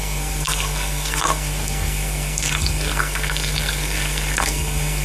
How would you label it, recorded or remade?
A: remade